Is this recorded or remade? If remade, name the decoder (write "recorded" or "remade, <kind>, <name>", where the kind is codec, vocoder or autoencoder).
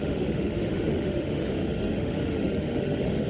remade, autoencoder, DAC-VAE